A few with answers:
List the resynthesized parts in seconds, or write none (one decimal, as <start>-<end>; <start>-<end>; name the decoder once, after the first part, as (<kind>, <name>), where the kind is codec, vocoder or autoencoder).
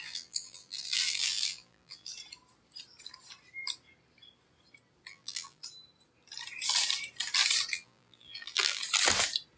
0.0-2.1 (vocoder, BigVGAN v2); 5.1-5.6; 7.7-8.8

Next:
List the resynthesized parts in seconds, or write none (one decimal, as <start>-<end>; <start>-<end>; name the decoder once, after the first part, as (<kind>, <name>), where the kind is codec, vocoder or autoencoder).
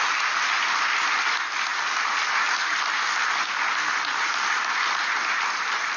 none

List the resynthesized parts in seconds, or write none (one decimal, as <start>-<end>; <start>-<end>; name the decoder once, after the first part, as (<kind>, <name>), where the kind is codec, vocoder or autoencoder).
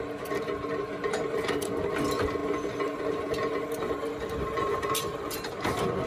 none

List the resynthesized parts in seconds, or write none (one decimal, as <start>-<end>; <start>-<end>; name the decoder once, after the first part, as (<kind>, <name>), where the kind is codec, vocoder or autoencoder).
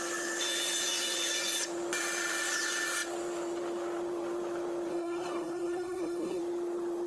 4.9-6.4 (codec, SNAC)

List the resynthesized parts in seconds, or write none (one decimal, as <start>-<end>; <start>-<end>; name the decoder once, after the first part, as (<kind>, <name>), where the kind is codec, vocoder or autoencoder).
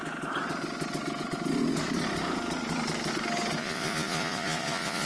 3.6-5.1 (vocoder, Vocos)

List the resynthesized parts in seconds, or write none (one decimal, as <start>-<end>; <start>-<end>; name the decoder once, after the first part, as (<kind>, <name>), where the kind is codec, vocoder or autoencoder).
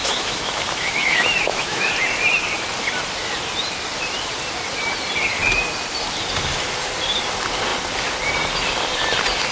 0.0-1.9 (autoencoder, DAC-VAE)